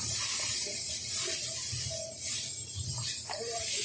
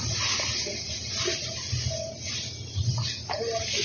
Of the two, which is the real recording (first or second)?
second